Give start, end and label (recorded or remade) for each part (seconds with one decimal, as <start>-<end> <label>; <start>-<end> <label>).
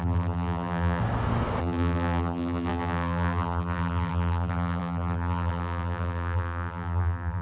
0.0-1.0 remade; 1.0-1.6 recorded; 1.6-7.4 remade